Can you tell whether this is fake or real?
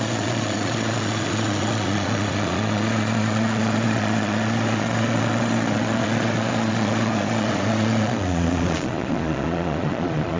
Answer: fake